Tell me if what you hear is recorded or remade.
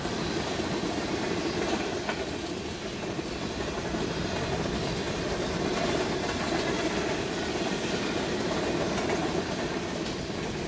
recorded